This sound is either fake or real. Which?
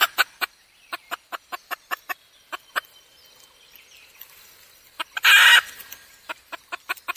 real